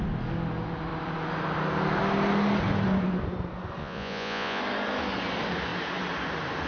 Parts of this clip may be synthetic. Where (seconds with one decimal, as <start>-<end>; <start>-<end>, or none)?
3.8-4.6